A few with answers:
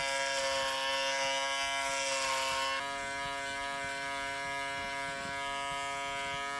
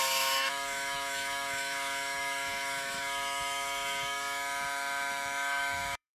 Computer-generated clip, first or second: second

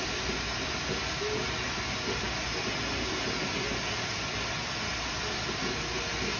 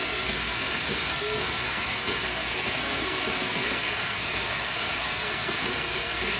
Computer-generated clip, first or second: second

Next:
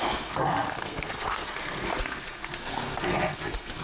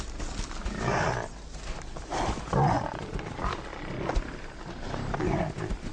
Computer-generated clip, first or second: first